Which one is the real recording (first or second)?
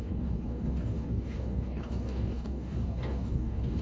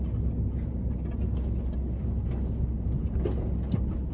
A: second